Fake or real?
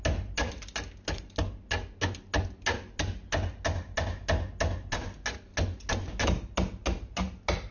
real